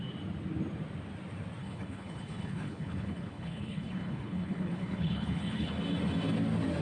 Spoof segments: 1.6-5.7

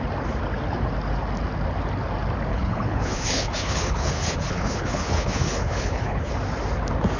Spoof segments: 2.5-6.3

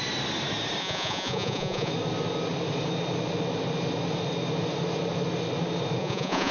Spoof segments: 0.8-1.9; 6.0-6.5

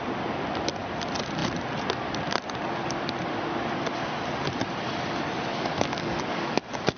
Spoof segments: 5.5-6.6

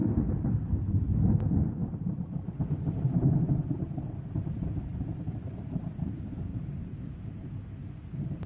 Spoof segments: 1.8-3.3; 4.9-5.8; 6.5-7.0

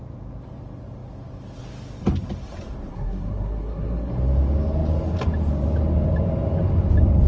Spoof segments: 2.9-4.1

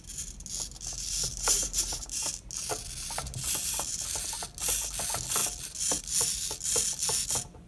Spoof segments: 1.3-2.2

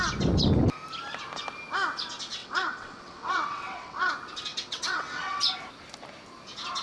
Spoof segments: 2.4-4.1; 4.5-5.4